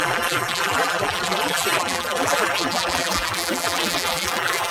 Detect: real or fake fake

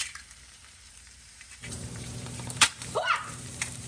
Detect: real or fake fake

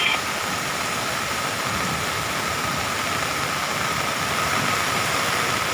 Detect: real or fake real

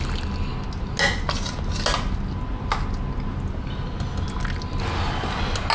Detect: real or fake real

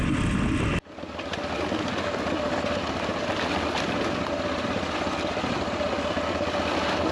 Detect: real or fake real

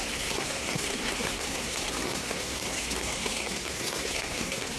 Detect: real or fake fake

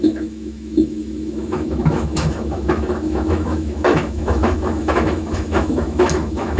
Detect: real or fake fake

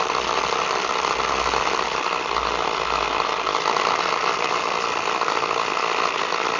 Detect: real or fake real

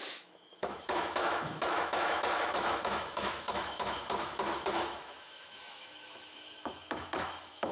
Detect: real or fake fake